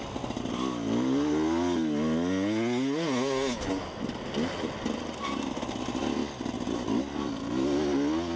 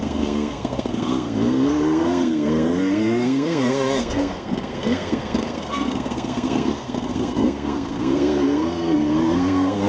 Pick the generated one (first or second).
second